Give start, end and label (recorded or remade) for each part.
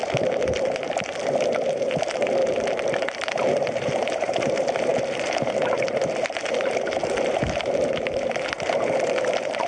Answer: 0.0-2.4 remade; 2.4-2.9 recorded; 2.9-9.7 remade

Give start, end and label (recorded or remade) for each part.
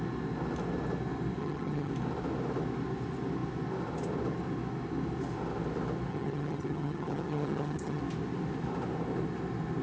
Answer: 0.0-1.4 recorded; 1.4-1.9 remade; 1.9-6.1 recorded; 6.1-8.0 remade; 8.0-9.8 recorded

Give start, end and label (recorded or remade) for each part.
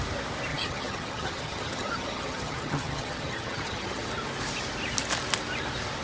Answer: 0.0-0.5 recorded; 0.5-4.1 remade; 4.1-6.0 recorded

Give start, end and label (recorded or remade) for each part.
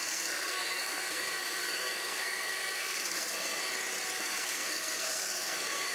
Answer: 0.0-3.6 remade; 3.6-4.2 recorded; 4.2-5.9 remade